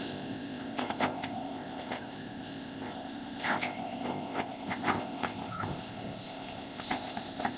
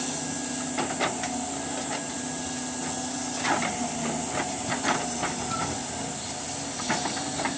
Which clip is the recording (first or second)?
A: second